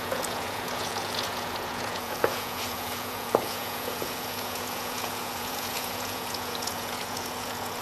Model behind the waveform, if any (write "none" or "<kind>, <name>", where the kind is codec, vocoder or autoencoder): vocoder, Vocos